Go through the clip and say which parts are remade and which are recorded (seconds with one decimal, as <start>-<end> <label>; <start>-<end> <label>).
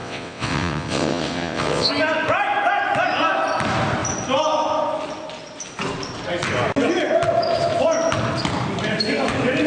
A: 0.0-1.9 remade; 1.9-9.7 recorded